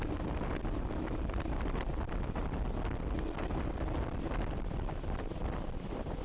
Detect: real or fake fake